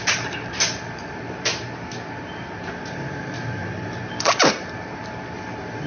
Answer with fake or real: fake